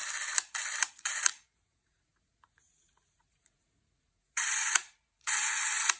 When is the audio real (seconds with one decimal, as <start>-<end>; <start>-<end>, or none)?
0.0-0.9